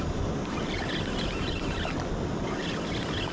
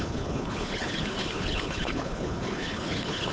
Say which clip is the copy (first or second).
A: second